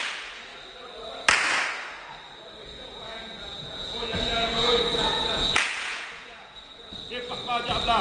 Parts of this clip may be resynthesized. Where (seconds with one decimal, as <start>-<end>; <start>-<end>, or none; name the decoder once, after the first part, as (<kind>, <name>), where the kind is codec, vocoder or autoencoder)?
2.6-6.9 (vocoder, Vocos)